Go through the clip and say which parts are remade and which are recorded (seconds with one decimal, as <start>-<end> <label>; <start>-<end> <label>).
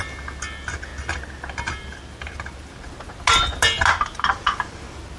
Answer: 0.0-5.2 recorded